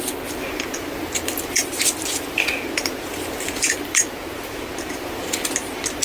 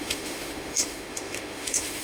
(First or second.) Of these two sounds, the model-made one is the second